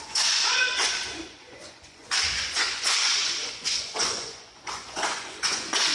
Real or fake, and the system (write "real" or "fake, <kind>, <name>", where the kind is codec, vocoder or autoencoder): fake, vocoder, Vocos